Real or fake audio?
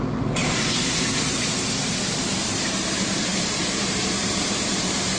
fake